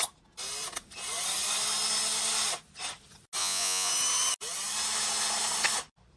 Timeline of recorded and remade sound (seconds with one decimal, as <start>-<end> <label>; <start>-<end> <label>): 0.0-3.4 recorded; 3.4-3.9 remade; 3.9-6.2 recorded